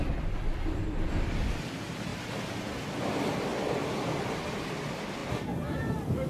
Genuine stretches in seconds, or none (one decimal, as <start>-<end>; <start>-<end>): 2.1-3.0; 3.5-4.7